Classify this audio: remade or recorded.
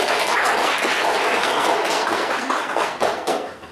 remade